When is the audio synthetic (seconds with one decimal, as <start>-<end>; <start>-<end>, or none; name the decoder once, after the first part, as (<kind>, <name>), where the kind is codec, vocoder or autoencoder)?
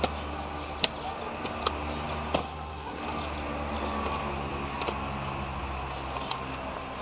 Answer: 2.4-3.0 (codec, SNAC)